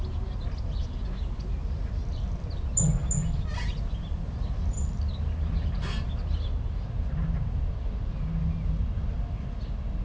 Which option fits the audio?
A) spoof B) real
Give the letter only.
B